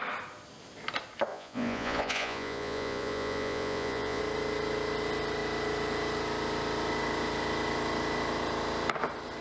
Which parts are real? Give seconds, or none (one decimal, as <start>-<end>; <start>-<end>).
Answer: 0.0-1.3; 4.2-9.4